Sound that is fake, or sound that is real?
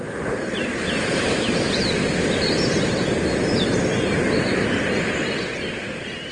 real